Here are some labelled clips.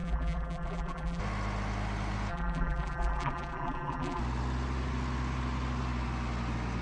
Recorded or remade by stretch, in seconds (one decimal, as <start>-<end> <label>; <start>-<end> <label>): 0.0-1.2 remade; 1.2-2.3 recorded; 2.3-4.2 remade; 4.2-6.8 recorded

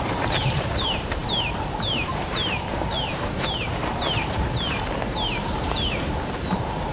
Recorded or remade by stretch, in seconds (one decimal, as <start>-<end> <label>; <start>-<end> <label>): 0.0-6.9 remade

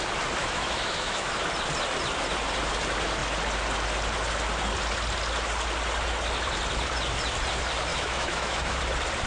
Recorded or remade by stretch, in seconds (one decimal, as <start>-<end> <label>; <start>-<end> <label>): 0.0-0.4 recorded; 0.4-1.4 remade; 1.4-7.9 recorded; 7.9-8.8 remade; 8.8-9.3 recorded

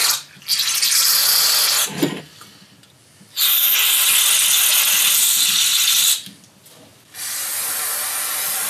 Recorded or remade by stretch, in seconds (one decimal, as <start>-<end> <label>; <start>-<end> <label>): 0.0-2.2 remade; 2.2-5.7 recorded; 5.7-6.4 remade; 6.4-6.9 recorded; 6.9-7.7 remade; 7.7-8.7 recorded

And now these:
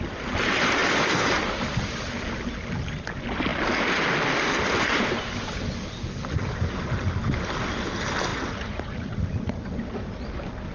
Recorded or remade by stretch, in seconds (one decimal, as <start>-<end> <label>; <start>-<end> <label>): 0.0-8.3 recorded; 8.3-9.6 remade; 9.6-10.7 recorded